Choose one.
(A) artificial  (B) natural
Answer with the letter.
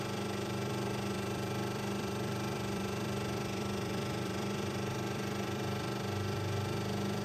A